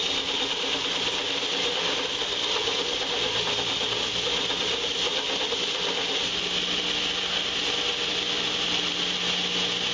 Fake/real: real